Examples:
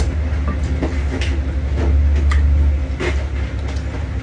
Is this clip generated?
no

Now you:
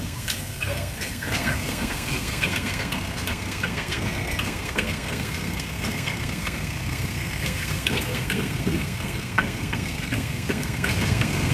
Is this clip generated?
yes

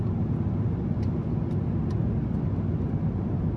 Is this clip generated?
no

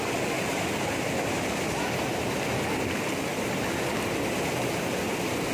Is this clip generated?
no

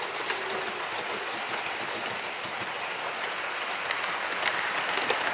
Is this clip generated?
no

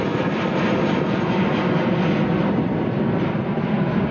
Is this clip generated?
no